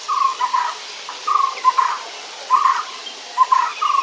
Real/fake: real